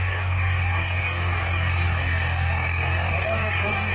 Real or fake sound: fake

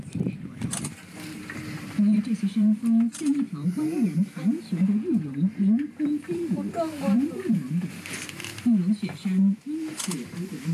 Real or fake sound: fake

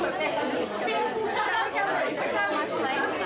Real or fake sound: real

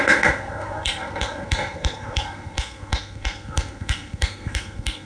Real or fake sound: fake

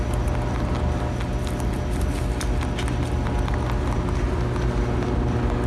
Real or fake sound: real